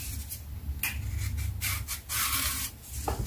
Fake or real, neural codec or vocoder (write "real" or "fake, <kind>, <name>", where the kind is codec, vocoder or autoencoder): real